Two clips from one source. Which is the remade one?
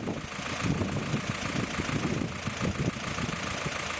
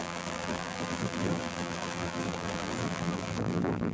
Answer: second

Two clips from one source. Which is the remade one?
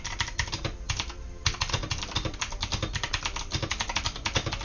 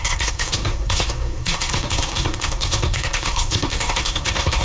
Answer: second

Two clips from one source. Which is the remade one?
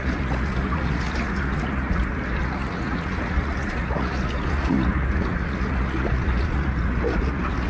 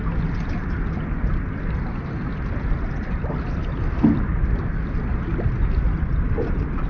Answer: first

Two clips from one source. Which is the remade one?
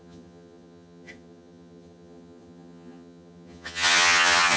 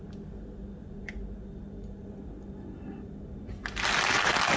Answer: first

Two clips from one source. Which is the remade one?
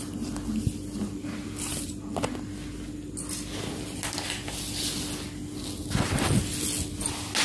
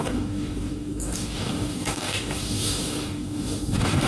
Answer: second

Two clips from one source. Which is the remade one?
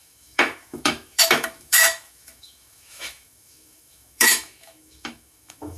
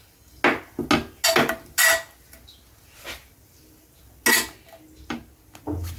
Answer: first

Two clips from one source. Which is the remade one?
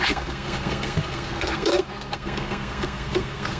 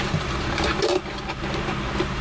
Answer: first